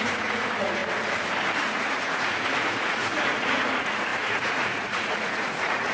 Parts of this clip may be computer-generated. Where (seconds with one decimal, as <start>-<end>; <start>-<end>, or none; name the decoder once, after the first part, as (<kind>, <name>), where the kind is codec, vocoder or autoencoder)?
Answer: 0.0-0.8 (vocoder, Vocos); 1.6-5.9